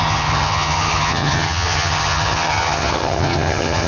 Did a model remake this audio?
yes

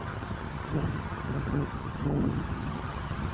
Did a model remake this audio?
yes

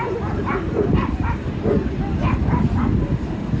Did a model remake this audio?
no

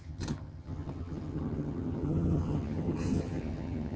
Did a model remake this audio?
yes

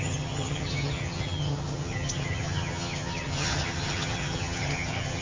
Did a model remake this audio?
yes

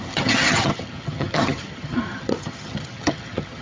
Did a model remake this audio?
yes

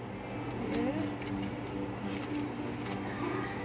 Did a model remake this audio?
no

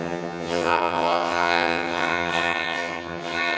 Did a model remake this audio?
yes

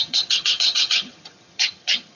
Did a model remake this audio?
yes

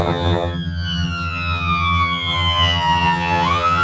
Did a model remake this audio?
yes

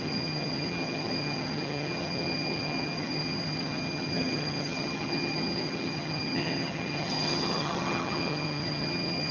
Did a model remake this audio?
yes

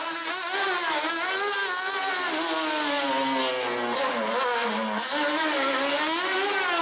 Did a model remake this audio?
no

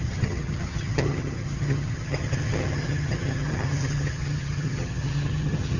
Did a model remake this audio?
yes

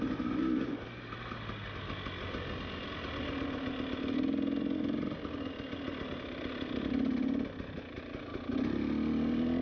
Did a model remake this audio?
no